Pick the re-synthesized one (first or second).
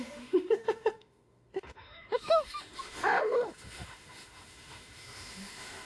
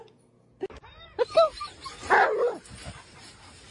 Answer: first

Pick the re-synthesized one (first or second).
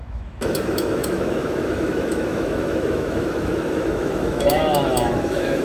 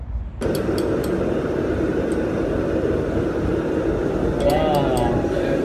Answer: first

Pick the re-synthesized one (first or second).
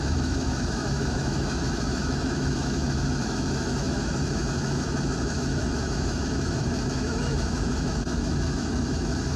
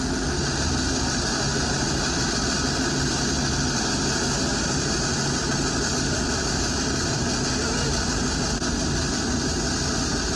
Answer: first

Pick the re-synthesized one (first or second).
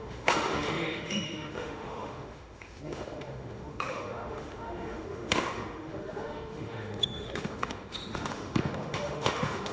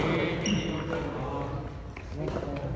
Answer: first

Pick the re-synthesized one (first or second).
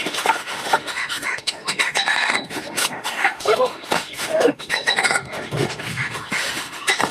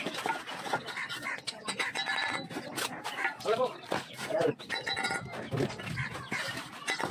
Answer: first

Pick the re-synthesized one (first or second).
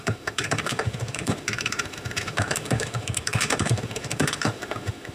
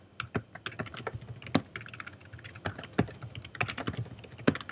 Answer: first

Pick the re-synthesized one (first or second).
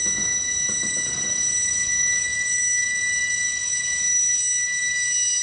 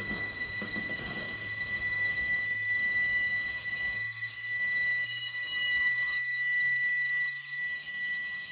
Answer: second